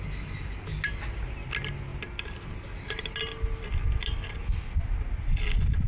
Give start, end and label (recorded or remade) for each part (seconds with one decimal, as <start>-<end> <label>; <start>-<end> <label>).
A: 0.0-5.9 recorded